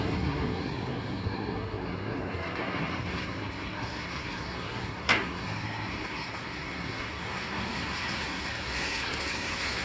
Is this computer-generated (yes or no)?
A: yes